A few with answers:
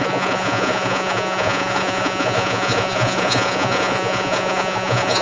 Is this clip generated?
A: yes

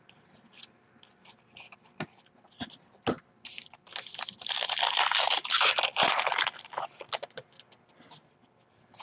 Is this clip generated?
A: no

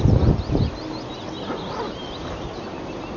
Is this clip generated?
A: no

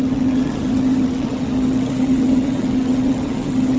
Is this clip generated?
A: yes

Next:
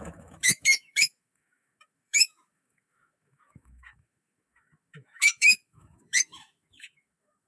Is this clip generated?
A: yes